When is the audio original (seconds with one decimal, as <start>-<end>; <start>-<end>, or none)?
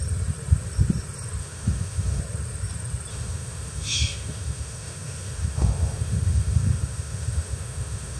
0.0-1.4; 2.2-3.1